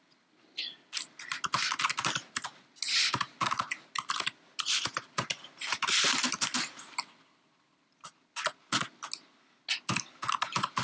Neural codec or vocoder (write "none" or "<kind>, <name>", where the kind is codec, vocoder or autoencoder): none